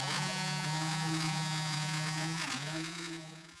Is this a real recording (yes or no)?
no